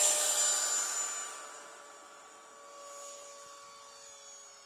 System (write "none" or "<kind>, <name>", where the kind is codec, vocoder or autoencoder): none